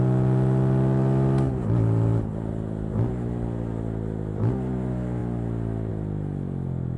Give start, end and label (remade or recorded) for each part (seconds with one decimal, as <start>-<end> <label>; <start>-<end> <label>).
0.0-7.0 recorded